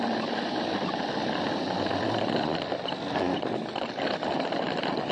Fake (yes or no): no